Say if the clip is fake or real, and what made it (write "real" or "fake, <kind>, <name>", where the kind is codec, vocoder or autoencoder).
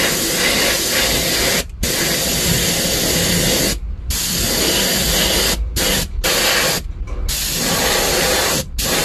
real